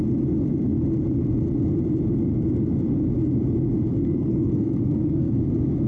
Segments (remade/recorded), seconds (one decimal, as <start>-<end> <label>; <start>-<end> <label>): 0.0-4.0 recorded; 4.0-5.3 remade; 5.3-5.9 recorded